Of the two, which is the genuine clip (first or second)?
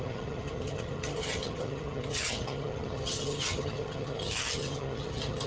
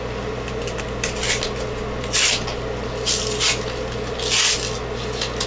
second